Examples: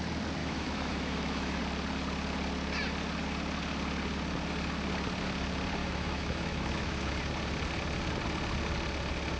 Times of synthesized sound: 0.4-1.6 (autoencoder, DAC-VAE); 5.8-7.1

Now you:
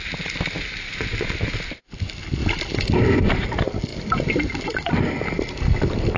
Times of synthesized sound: none

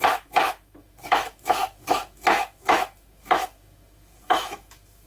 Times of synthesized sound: 0.0-5.1 (autoencoder, DAC-VAE)

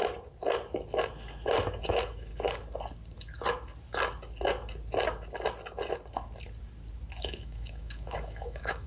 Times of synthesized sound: 1.8-2.3 (autoencoder, DAC-VAE); 7.2-8.9

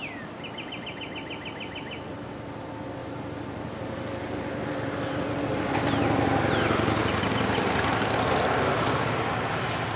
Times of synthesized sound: none

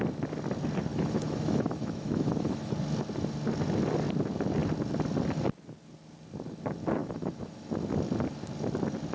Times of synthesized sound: 0.9-2.7 (autoencoder, DAC-VAE); 7.0-7.7